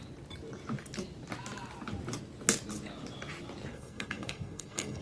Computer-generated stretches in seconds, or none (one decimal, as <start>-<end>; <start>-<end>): 3.7-5.0